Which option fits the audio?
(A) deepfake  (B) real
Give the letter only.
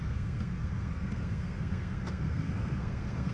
A